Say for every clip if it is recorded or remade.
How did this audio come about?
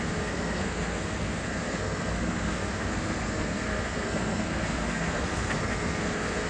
remade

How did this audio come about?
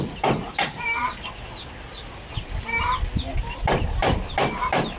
recorded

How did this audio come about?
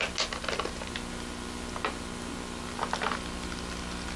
recorded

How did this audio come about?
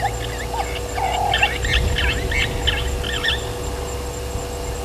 recorded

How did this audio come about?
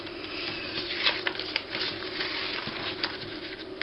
recorded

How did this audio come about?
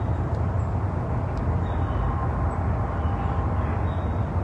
recorded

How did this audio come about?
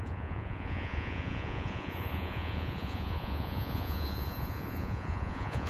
remade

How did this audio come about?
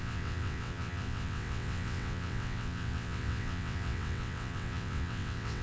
remade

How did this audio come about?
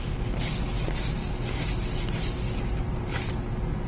recorded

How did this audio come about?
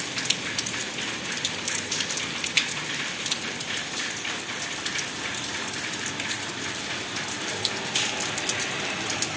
remade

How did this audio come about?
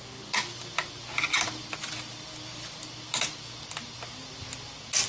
recorded